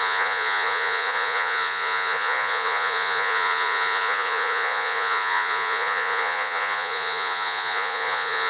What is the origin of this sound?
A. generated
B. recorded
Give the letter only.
A